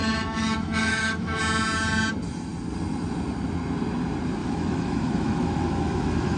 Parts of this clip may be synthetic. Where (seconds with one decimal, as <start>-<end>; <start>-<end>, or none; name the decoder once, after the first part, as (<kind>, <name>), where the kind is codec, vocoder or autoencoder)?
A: 0.0-1.4 (autoencoder, DAC-VAE); 4.4-6.4